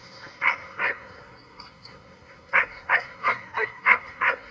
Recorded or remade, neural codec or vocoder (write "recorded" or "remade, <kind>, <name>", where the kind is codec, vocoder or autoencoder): remade, codec, SNAC